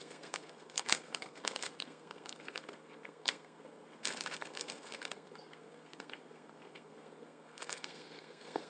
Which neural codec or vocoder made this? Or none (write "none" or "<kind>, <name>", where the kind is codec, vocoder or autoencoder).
codec, SNAC